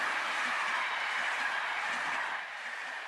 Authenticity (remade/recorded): recorded